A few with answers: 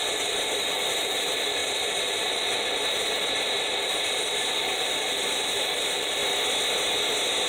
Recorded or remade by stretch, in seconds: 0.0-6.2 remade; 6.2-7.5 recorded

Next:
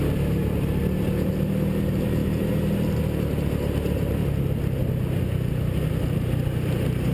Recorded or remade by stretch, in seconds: 0.0-0.8 remade; 0.8-1.5 recorded; 1.5-2.2 remade; 2.2-3.5 recorded; 3.5-4.2 remade; 4.2-5.5 recorded; 5.5-7.1 remade

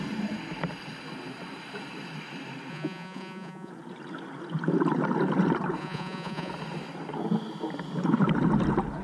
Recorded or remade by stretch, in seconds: 0.0-2.7 recorded; 2.7-3.7 remade; 3.7-5.8 recorded; 5.8-6.5 remade; 6.5-9.0 recorded